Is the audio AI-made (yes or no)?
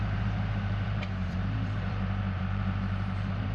yes